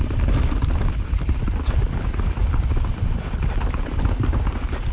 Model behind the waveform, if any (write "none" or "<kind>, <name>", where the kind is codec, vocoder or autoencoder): none